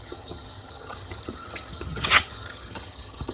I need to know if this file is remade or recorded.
remade